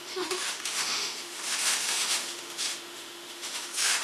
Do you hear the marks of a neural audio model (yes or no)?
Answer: yes